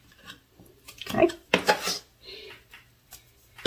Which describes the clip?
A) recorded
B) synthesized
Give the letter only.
A